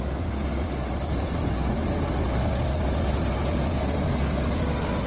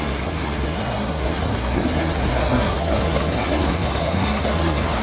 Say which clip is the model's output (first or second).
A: second